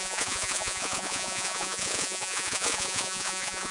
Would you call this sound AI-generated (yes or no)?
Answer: yes